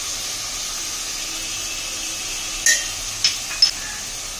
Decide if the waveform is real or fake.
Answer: real